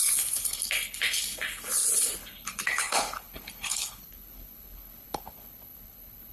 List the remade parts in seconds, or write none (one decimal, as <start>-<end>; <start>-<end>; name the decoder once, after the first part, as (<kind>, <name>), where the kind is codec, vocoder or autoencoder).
0.0-6.3 (codec, HILCodec)